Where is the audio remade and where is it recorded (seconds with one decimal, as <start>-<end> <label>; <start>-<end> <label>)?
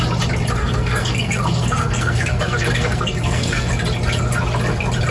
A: 0.0-0.6 recorded; 0.6-3.7 remade; 3.7-5.1 recorded